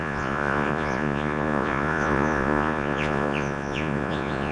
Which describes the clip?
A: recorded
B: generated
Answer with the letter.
B